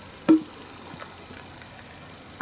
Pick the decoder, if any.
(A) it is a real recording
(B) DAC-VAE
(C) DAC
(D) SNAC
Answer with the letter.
A